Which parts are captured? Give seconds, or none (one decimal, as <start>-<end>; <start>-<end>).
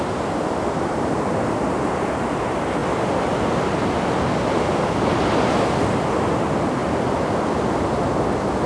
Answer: 0.0-6.8; 7.4-8.7